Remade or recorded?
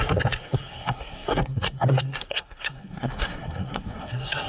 remade